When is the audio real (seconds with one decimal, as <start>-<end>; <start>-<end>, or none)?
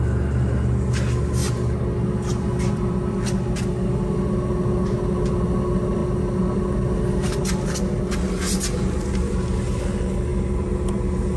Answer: 0.0-11.4